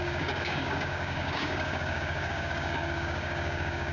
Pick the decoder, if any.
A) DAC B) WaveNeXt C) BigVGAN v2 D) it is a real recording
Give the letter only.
A